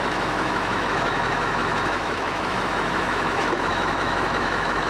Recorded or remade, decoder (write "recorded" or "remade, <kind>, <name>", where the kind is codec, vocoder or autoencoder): remade, autoencoder, DAC-VAE